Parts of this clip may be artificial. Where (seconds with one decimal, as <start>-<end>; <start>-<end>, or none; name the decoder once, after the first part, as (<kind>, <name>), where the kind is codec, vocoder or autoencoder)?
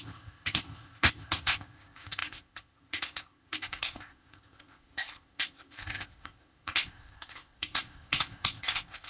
0.0-9.1 (codec, ZipCodec)